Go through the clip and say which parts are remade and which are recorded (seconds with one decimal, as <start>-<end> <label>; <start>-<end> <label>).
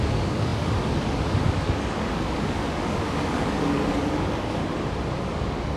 0.0-4.6 remade; 4.6-5.2 recorded; 5.2-5.8 remade